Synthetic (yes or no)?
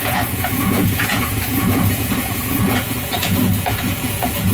yes